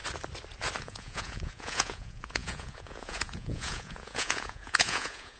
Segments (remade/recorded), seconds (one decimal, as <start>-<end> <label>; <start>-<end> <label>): 0.0-0.8 recorded; 0.8-5.4 remade